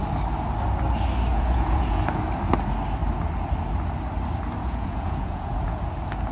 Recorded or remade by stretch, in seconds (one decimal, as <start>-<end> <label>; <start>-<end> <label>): 0.0-1.3 recorded; 1.3-2.0 remade; 2.0-4.6 recorded; 4.6-5.8 remade; 5.8-6.3 recorded